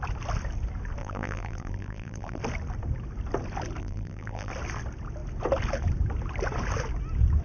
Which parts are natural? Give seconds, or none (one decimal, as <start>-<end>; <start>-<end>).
0.0-1.0; 2.4-3.8; 4.5-7.4